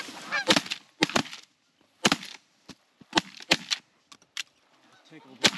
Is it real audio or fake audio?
real